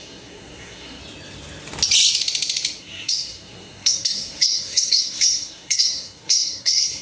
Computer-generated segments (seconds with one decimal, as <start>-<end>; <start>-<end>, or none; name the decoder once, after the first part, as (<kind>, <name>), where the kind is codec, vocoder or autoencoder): 0.0-1.0 (codec, SNAC); 2.8-7.0